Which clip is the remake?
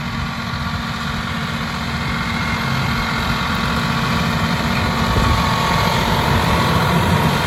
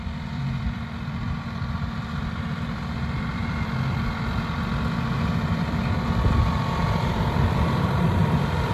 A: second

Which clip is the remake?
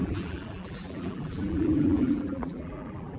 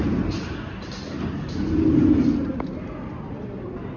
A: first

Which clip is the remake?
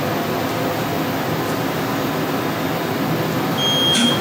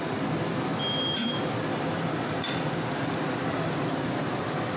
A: second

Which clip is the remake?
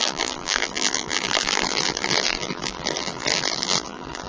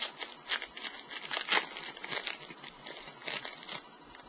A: first